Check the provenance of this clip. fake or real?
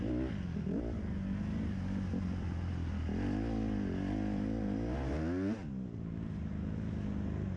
real